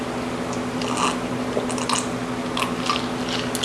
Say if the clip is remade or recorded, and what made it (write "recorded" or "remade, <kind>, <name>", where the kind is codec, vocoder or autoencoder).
recorded